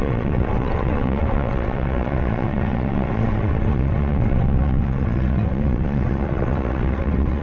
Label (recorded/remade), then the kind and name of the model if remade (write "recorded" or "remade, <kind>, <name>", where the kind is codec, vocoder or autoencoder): remade, vocoder, WaveNeXt